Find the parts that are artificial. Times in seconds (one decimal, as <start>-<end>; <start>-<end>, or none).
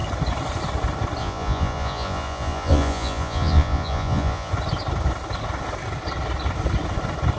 1.2-4.5